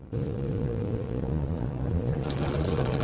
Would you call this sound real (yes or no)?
no